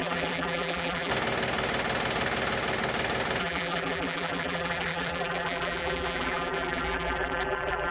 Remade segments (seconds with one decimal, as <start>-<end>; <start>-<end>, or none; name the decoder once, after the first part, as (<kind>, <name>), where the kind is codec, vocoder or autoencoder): 0.0-1.1 (vocoder, BigVGAN v2); 3.4-7.9